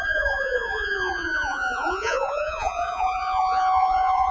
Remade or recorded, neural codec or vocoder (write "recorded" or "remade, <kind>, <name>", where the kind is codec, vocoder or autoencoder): remade, vocoder, Vocos